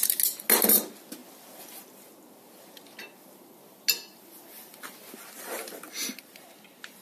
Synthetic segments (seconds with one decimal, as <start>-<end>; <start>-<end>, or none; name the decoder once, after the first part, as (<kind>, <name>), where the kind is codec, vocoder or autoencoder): none